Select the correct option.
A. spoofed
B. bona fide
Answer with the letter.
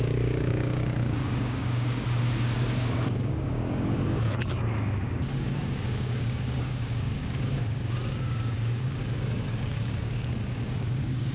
A